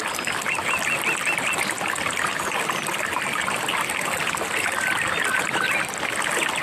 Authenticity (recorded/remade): recorded